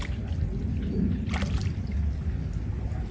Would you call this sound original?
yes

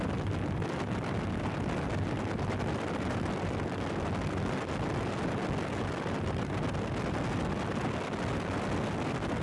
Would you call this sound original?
yes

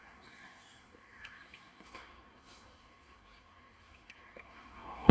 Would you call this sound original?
no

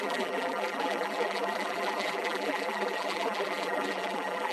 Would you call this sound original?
no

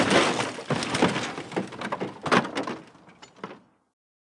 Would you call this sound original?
yes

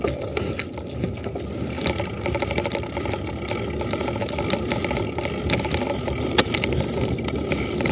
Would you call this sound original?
yes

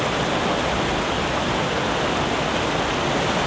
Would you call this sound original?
yes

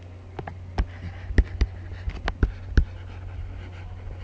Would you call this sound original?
yes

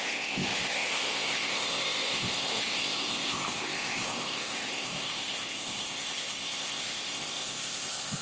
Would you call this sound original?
no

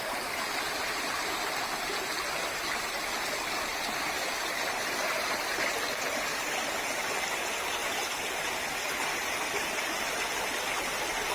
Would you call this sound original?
yes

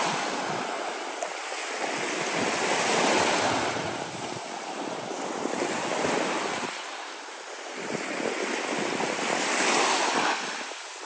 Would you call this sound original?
yes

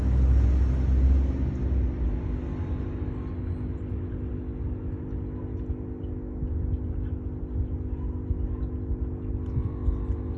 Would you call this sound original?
yes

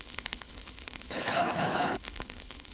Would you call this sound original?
no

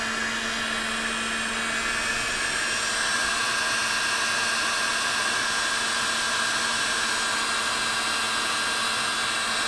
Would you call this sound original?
yes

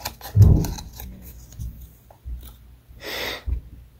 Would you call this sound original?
yes